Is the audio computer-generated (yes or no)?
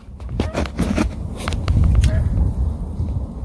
no